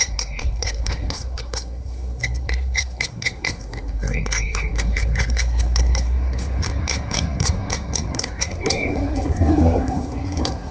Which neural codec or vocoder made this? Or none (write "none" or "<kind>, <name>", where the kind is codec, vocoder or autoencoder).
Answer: codec, SNAC